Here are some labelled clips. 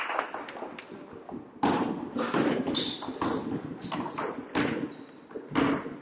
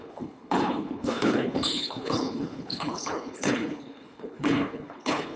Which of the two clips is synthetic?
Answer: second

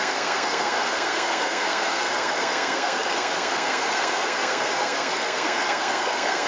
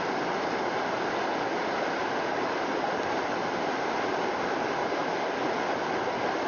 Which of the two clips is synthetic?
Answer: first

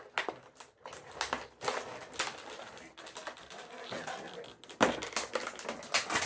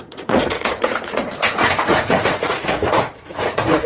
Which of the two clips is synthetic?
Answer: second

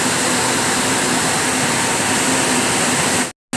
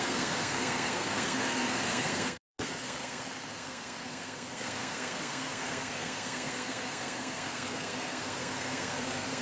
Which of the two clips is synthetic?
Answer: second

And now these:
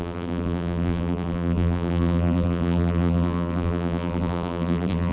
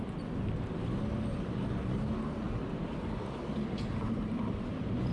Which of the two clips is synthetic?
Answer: first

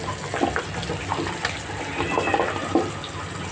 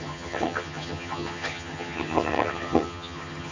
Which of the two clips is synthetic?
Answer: second